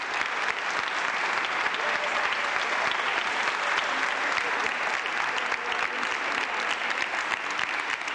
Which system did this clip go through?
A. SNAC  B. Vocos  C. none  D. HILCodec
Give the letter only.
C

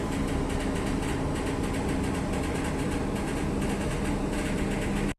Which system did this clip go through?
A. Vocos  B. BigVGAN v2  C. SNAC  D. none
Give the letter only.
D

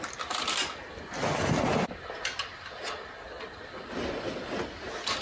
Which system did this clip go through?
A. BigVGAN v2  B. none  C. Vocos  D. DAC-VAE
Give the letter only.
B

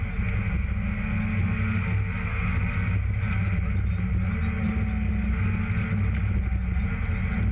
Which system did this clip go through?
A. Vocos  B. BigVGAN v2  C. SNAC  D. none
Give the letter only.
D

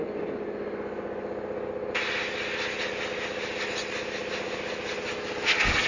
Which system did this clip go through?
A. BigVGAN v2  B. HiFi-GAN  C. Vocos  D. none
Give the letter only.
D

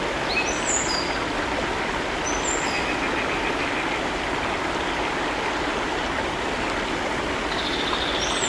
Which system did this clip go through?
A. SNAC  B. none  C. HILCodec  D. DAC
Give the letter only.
B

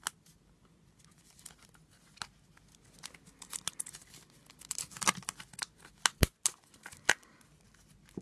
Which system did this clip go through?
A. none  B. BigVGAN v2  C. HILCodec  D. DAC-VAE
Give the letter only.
A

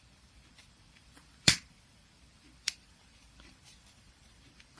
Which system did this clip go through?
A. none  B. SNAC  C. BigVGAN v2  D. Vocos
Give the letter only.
C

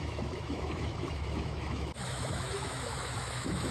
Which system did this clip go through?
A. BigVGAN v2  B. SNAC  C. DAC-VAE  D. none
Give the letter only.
C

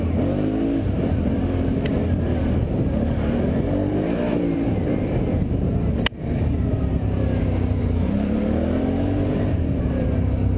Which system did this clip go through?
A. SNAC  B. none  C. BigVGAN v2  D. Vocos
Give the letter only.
C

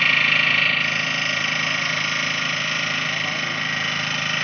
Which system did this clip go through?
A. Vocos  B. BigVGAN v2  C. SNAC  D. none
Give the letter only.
D